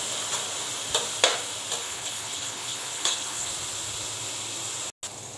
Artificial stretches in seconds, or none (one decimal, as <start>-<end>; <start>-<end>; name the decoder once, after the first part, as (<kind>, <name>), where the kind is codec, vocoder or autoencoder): 1.8-3.5 (codec, HILCodec)